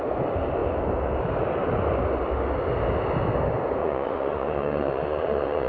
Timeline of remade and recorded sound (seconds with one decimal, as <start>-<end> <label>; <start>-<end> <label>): 0.0-3.8 recorded; 3.8-5.7 remade